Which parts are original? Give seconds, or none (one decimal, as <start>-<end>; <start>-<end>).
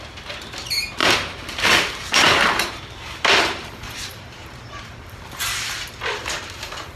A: 0.0-1.0; 5.2-7.0